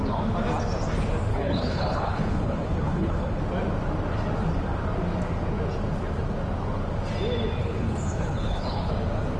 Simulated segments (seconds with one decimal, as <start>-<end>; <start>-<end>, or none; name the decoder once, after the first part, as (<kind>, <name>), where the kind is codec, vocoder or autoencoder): 1.3-3.4 (codec, HILCodec); 7.6-8.9